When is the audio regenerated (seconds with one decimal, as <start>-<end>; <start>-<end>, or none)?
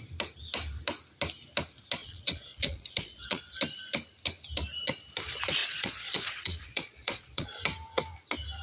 2.0-3.4; 5.6-7.6